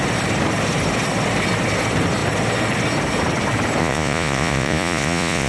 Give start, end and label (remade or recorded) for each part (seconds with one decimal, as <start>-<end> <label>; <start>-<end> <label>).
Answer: 0.0-3.8 recorded; 3.8-5.5 remade